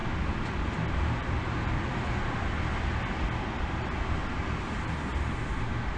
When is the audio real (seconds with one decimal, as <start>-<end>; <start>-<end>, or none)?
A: 0.7-1.2; 2.4-4.4; 5.1-6.0